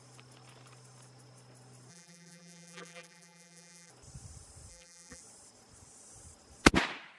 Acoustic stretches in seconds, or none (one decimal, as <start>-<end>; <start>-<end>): 0.0-1.9; 3.9-4.7; 5.2-7.2